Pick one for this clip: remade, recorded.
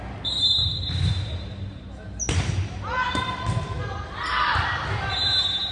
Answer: recorded